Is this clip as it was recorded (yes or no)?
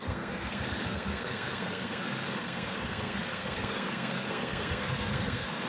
no